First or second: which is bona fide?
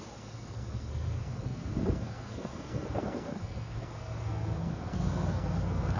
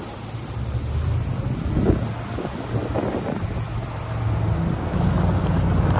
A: second